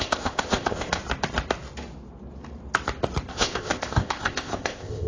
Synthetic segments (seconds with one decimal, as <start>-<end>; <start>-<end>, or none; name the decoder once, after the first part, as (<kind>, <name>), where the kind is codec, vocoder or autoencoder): 0.0-1.0 (codec, ZipCodec); 3.3-5.1